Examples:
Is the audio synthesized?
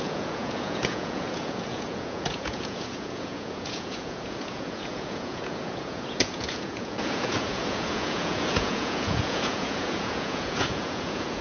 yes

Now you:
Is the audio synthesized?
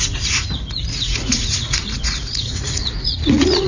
yes